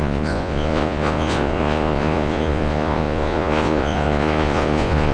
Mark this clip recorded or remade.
remade